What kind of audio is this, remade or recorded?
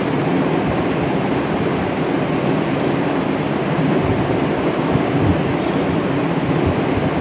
recorded